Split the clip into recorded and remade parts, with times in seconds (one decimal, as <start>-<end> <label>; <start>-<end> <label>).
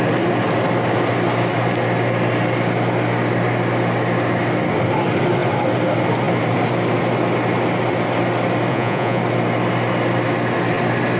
0.0-8.7 recorded; 8.7-9.2 remade; 9.2-11.2 recorded